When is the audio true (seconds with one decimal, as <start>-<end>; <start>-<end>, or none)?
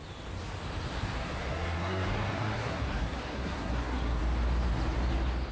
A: 0.0-0.9; 4.2-5.5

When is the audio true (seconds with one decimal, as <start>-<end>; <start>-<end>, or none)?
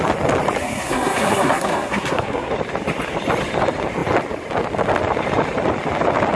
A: 0.0-0.6; 2.5-6.4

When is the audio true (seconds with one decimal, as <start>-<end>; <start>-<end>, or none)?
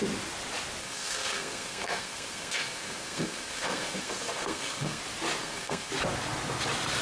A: 0.0-0.8; 5.0-5.4; 5.9-7.0